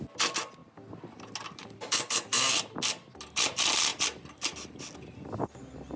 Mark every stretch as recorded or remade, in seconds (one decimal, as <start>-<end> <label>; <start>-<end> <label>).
0.0-6.0 recorded